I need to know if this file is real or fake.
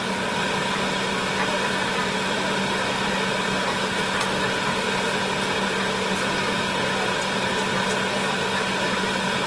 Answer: real